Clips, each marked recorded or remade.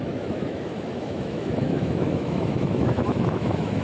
remade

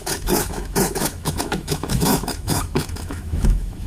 remade